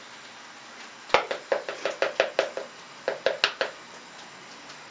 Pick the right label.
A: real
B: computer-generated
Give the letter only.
A